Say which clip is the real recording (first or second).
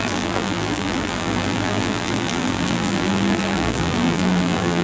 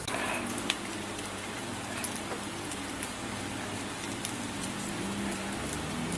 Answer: second